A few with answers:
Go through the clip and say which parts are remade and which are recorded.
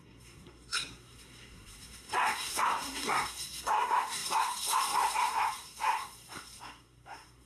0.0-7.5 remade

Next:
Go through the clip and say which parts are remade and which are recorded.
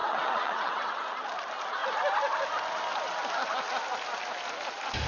0.0-1.0 remade; 1.0-5.1 recorded